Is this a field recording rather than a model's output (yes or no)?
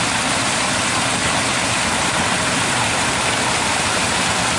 yes